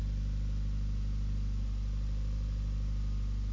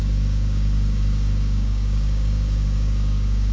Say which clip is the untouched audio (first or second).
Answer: first